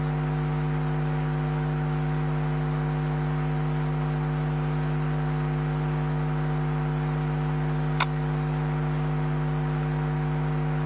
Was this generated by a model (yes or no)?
no